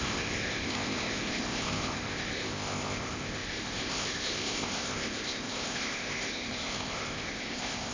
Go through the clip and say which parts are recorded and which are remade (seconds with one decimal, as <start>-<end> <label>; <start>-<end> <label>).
0.0-7.9 remade